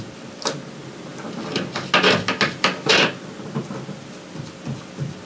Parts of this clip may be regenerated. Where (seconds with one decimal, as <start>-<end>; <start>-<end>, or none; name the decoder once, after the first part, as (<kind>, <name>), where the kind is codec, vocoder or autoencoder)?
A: none